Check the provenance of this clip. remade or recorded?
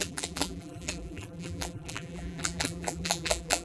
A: remade